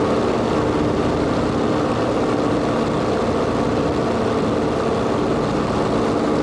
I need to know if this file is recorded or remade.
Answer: recorded